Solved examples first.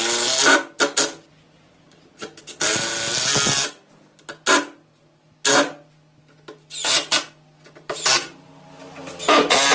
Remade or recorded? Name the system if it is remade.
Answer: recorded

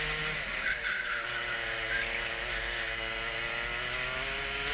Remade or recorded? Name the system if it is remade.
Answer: recorded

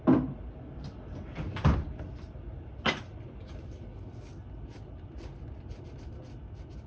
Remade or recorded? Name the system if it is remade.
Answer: recorded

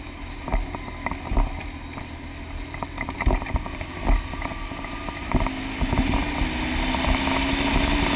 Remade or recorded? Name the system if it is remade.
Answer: recorded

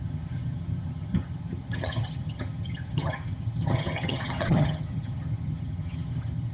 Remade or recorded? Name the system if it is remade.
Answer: remade, vocoder, HiFi-GAN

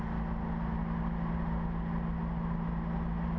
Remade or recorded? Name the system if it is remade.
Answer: recorded